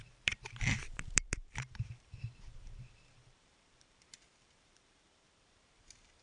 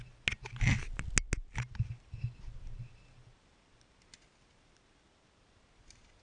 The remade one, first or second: first